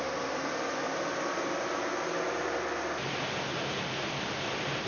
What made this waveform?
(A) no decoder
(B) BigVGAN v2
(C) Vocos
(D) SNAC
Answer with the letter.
A